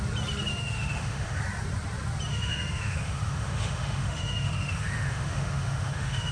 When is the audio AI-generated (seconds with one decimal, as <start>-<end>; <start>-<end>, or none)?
0.5-1.4; 2.3-6.3